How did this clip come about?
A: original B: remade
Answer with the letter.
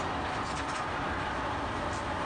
A